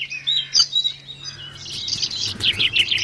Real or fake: real